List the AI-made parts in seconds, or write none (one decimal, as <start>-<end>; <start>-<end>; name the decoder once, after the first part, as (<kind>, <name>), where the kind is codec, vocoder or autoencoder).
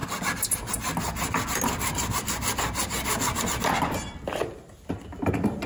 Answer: none